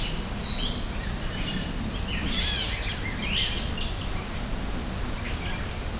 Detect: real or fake real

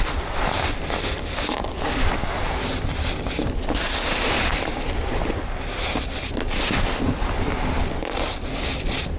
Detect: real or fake real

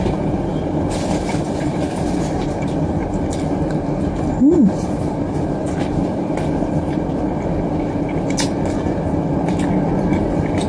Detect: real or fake real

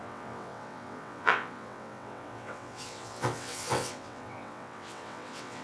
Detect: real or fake fake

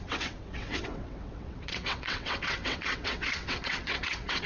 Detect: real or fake fake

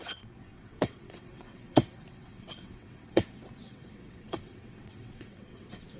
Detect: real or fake fake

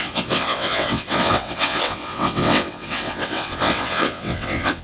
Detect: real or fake fake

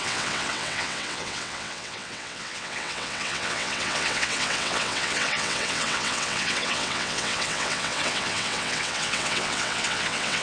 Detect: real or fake fake